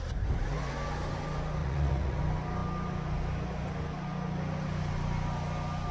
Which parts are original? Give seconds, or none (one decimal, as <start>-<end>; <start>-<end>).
0.0-1.6; 2.2-5.9